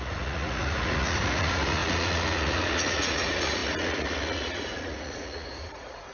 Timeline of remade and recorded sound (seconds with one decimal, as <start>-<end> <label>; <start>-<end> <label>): 0.0-6.1 remade